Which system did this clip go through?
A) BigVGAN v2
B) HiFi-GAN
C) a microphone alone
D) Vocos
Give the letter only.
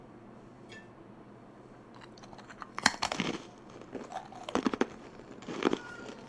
A